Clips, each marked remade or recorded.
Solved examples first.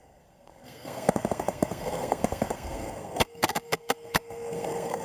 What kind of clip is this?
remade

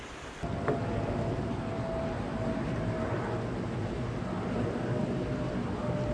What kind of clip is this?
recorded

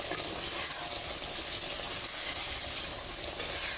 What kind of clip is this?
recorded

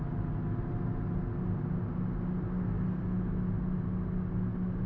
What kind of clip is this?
recorded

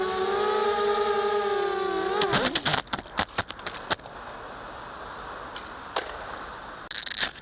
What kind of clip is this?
recorded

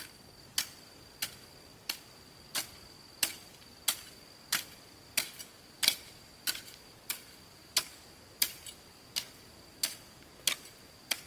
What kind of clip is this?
recorded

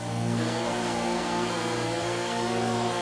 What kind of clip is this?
remade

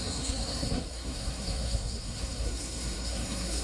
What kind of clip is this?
remade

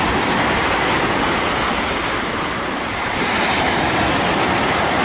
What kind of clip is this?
recorded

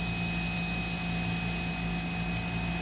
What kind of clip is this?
recorded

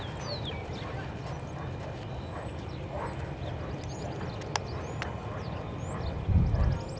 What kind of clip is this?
recorded